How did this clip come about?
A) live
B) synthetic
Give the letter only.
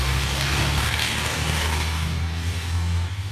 B